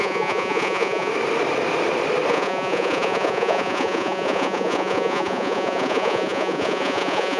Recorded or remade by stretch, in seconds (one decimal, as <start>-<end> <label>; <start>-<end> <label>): 0.0-1.1 remade; 1.1-2.3 recorded; 2.3-7.4 remade